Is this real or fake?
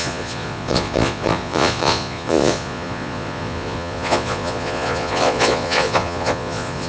fake